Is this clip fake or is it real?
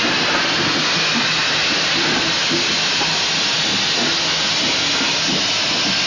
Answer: real